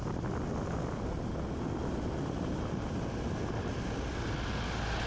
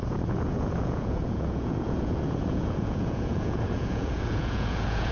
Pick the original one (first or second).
first